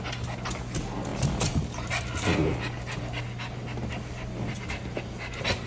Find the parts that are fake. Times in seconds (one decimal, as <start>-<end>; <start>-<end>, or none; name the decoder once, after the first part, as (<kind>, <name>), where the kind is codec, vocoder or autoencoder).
none